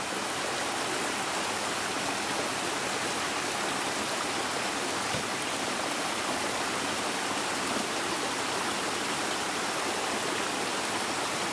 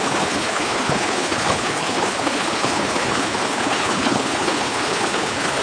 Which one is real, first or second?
first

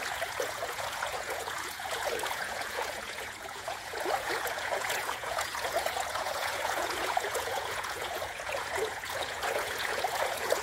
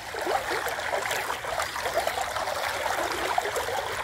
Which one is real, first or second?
second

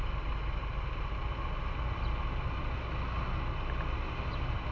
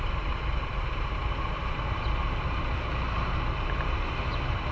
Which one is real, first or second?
first